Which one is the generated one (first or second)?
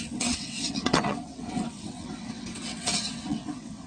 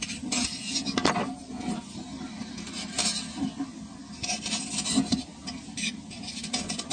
first